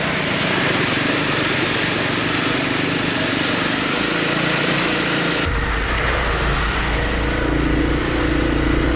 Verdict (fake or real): real